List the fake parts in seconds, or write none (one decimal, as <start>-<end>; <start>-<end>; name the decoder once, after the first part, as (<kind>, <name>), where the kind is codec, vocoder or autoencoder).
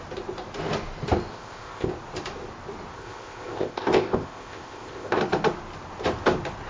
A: 1.3-1.9 (codec, ZipCodec); 2.9-5.2